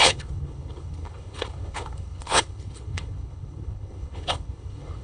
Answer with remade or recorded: remade